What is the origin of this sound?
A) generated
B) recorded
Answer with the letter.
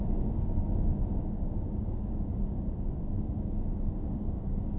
A